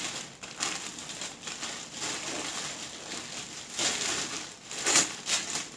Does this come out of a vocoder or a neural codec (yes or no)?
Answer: no